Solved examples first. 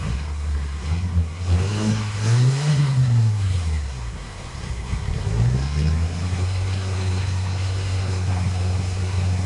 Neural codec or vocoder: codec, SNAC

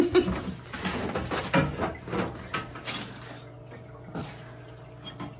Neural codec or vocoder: none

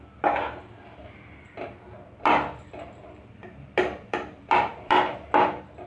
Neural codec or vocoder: vocoder, BigVGAN v2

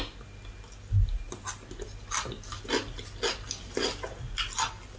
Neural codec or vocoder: none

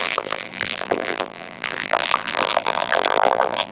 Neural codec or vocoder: vocoder, BigVGAN v2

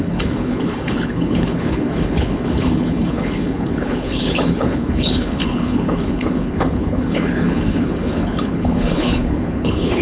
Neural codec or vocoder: codec, HILCodec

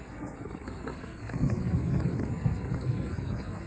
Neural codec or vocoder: codec, SNAC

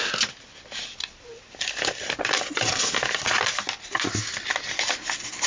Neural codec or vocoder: none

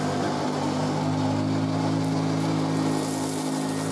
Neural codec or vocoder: none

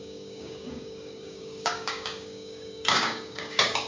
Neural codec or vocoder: codec, DAC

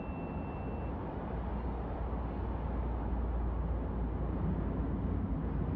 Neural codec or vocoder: none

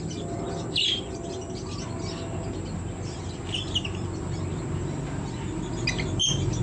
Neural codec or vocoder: none